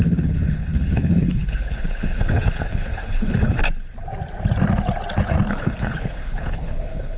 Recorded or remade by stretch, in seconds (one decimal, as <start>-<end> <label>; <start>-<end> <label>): 0.0-3.6 remade; 3.6-5.5 recorded; 5.5-7.2 remade